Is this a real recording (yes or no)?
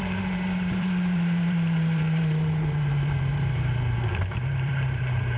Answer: no